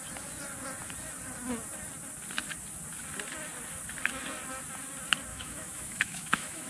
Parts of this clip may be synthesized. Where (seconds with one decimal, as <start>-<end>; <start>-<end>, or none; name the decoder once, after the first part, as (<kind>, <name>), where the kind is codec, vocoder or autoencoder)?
5.3-6.7 (autoencoder, DAC-VAE)